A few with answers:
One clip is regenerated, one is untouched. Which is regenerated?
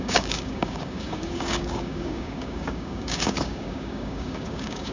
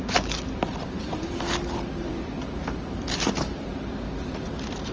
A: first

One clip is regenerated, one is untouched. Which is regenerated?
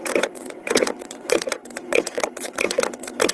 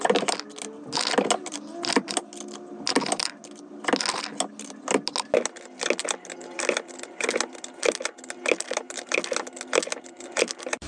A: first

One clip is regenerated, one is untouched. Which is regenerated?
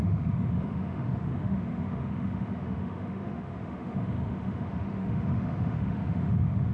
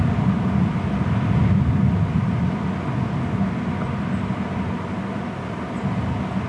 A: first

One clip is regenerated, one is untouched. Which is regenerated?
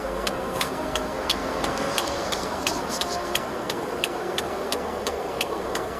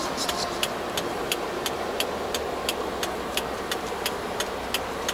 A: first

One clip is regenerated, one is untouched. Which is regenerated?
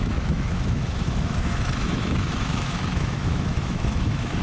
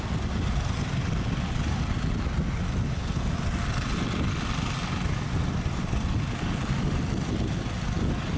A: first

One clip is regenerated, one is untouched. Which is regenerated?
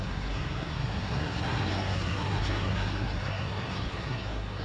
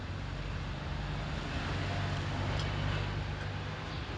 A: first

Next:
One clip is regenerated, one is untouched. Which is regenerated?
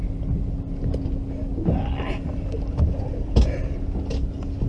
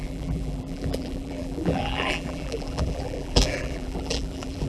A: second